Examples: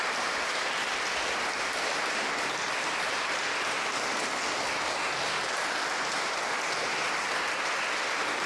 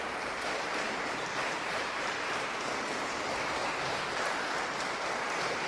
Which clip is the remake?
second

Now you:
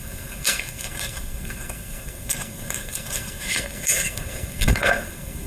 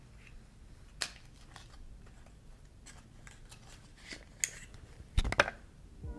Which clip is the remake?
first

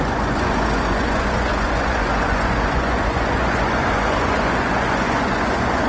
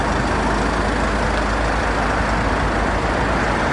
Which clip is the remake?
first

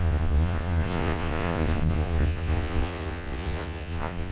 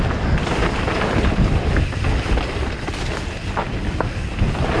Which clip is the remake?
first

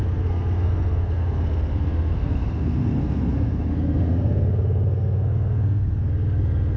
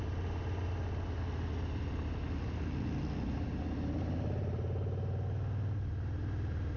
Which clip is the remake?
first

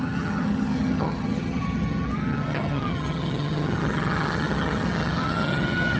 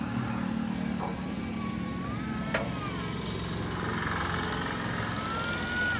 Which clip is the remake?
first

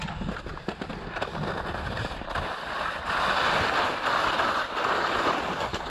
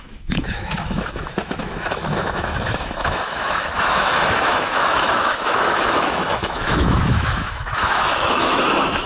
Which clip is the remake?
second